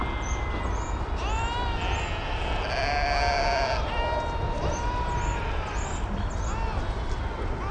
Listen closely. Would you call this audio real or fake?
real